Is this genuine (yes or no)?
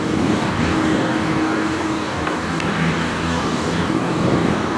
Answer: no